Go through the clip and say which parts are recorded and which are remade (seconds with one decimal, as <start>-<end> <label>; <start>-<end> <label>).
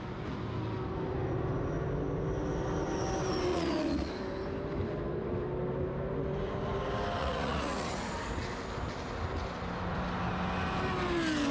0.0-3.5 recorded; 3.5-4.1 remade; 4.1-7.2 recorded; 7.2-8.1 remade; 8.1-11.5 recorded